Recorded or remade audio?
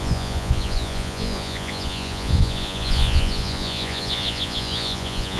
remade